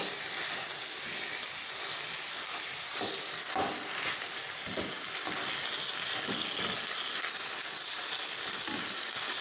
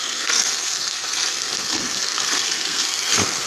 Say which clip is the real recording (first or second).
first